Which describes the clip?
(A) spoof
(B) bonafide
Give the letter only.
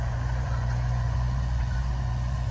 A